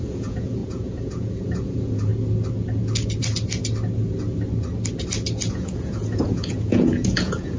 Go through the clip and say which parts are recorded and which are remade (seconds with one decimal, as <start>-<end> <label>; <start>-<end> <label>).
0.0-2.1 remade; 2.1-5.5 recorded; 5.5-7.6 remade